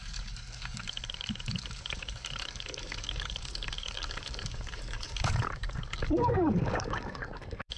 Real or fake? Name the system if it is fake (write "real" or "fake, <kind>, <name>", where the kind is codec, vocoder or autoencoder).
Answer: fake, codec, DAC